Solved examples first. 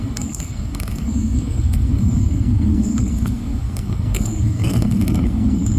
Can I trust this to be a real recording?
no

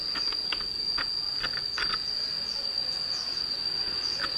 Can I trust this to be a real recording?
yes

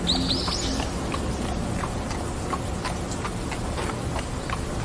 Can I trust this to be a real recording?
yes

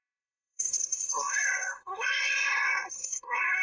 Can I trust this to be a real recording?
no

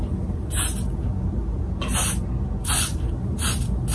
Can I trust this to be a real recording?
yes